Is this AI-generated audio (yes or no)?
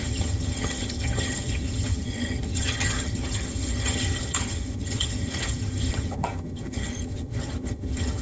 yes